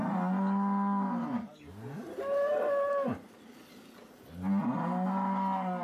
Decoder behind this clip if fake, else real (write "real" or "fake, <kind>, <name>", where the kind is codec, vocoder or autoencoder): real